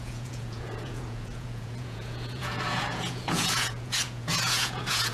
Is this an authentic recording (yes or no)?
no